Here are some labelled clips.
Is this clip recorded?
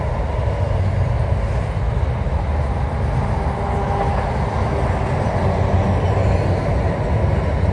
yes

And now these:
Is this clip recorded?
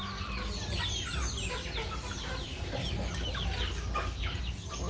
yes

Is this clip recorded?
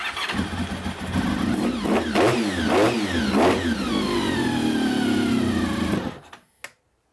yes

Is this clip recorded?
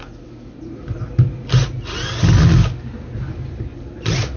yes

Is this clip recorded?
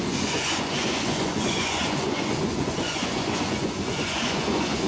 no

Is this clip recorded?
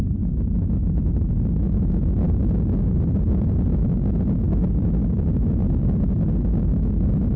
yes